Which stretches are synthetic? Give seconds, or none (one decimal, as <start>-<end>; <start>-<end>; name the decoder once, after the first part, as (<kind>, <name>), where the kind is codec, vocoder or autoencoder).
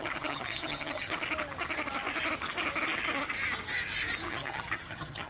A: 0.0-1.1 (vocoder, HiFi-GAN); 4.3-5.3